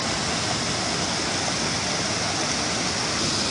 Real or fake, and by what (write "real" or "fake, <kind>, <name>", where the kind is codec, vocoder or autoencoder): real